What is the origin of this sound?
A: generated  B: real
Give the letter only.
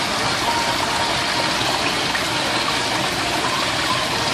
B